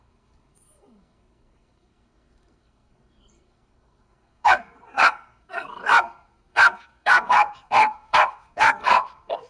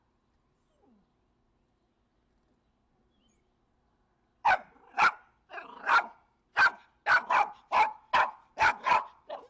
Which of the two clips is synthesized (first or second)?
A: first